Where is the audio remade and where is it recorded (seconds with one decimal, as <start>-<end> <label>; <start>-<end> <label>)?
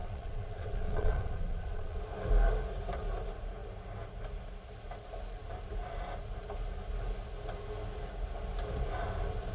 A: 0.0-2.0 remade; 2.0-9.5 recorded